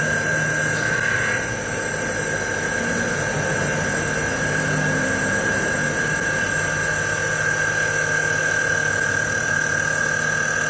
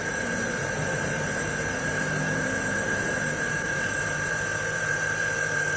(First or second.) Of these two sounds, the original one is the first